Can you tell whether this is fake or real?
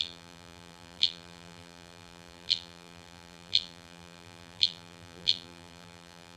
fake